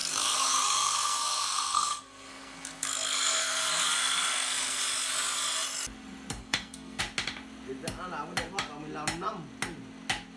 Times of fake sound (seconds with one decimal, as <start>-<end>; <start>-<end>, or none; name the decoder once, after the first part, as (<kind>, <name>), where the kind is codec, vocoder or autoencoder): 0.0-4.8 (codec, SNAC); 6.4-7.0